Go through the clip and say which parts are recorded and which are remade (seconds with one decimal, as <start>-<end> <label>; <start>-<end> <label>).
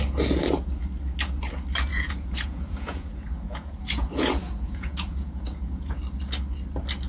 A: 0.0-1.9 recorded; 1.9-6.0 remade; 6.0-7.1 recorded